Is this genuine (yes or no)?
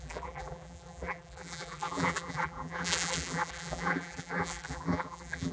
no